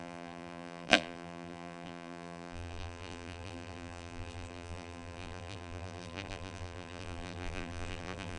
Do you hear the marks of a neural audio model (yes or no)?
yes